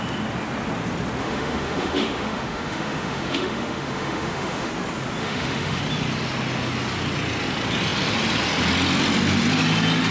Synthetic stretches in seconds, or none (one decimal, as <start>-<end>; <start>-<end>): 1.2-4.7; 5.2-5.8